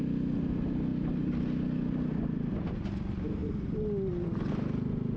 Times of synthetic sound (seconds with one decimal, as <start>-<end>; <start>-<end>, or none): none